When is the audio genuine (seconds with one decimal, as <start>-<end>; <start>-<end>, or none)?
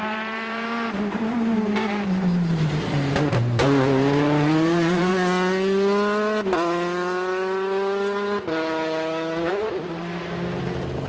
5.1-9.5